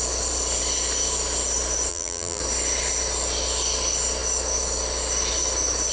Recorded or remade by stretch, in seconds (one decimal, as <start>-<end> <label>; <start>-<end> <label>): 0.0-1.9 recorded; 1.9-2.4 remade; 2.4-5.9 recorded